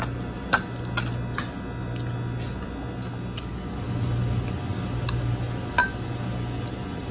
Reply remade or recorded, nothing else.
recorded